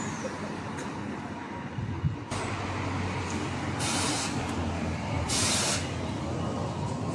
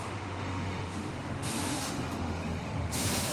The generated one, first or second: second